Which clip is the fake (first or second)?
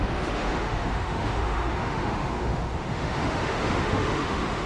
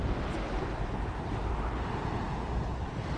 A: first